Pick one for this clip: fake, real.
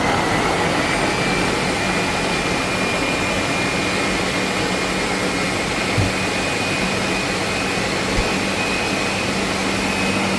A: real